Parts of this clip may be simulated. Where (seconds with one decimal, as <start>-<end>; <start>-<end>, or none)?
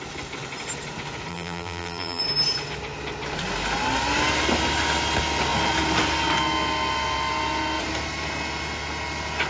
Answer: 1.3-2.2